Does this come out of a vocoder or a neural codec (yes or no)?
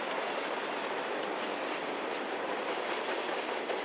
no